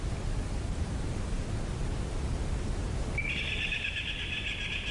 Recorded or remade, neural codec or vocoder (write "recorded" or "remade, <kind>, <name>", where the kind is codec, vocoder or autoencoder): recorded